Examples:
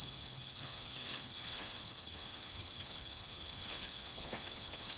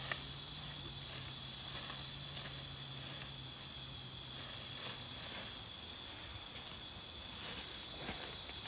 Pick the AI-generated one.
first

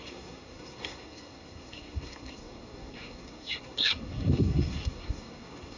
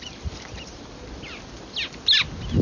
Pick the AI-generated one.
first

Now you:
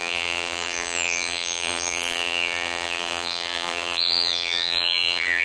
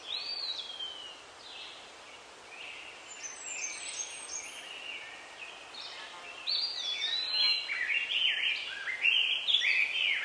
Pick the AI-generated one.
first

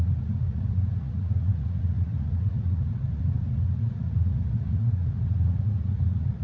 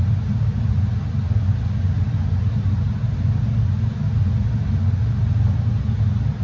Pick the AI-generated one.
first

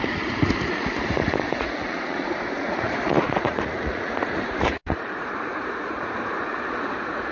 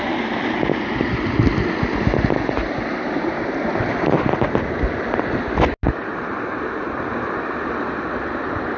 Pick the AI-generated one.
first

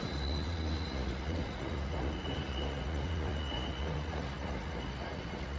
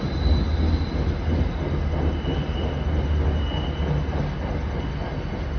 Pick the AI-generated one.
first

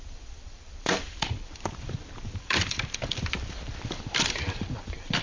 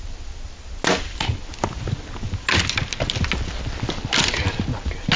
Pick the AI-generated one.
first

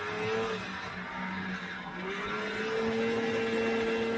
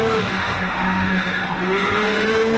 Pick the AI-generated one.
second